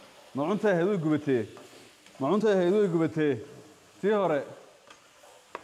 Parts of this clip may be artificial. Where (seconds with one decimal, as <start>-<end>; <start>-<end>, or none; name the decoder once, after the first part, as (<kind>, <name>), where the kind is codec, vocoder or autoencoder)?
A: none